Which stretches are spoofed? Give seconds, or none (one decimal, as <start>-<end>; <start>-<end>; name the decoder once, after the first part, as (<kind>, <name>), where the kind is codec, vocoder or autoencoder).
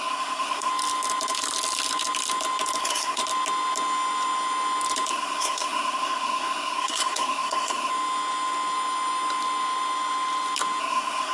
0.0-0.7 (codec, SNAC); 2.8-3.2; 5.1-7.9; 10.8-11.3